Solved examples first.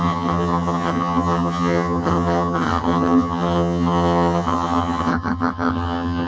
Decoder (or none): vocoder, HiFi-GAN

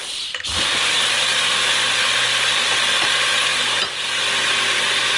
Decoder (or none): none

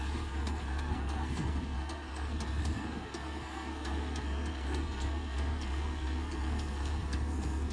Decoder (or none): codec, SNAC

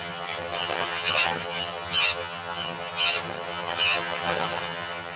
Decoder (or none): vocoder, HiFi-GAN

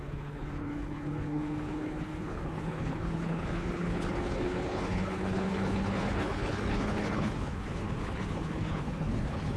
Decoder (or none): codec, HILCodec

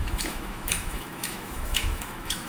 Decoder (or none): autoencoder, DAC-VAE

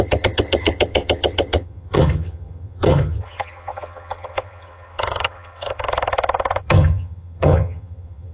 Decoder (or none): vocoder, HiFi-GAN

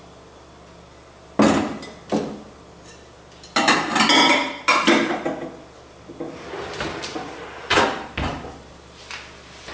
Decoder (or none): none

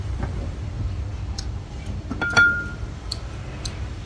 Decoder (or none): vocoder, BigVGAN v2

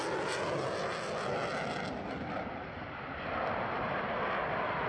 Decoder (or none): none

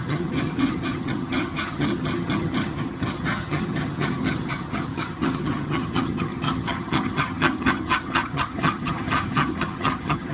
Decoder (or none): vocoder, HiFi-GAN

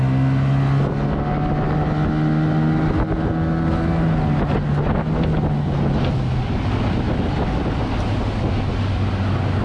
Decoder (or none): none